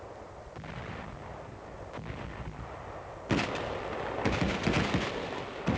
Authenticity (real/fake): real